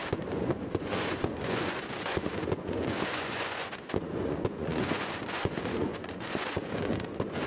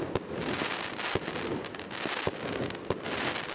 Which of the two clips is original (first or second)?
second